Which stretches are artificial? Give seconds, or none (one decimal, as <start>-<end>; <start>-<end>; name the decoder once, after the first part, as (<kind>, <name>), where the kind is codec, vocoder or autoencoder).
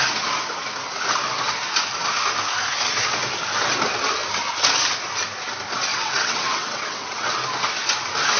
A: 5.9-7.4 (vocoder, WaveNeXt)